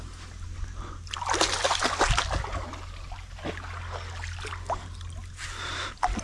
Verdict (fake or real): real